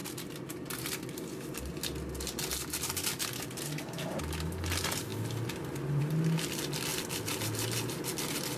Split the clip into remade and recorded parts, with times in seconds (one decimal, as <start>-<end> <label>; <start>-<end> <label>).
0.0-8.6 recorded